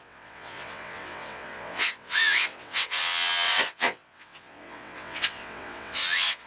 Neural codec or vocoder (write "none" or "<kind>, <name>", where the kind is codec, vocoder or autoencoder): vocoder, WaveNeXt